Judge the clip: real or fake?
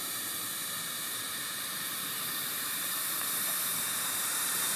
fake